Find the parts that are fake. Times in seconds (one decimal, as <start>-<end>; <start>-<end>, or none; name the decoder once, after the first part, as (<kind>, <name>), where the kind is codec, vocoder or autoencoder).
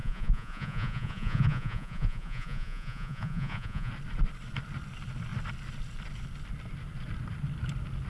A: 0.0-3.9 (vocoder, Vocos)